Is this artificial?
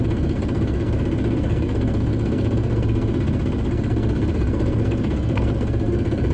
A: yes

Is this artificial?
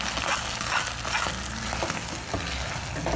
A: no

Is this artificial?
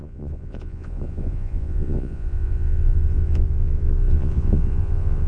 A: yes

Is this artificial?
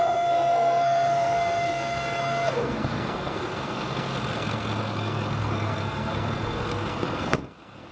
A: yes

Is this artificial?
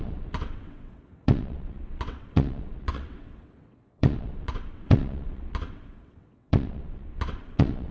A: yes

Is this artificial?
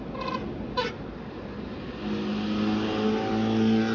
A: no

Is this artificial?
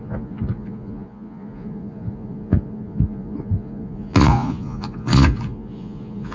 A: yes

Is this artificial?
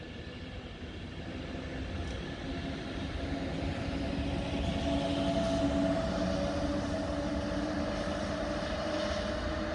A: no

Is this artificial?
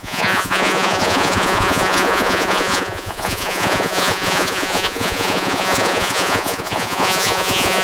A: yes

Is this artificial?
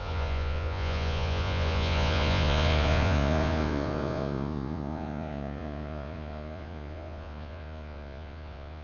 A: yes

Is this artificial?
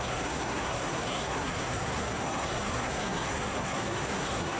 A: yes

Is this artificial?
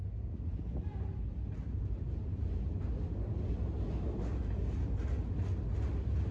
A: no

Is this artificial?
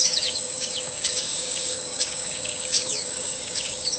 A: yes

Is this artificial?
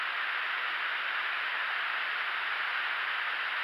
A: no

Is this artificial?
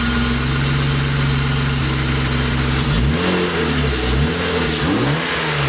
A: no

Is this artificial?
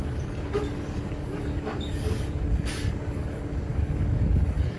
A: yes